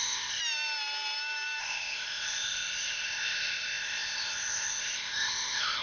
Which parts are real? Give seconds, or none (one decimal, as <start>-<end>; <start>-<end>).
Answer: 0.4-1.6